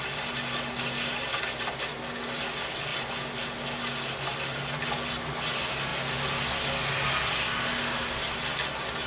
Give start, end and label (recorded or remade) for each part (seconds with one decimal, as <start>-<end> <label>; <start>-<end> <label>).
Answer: 0.0-9.1 recorded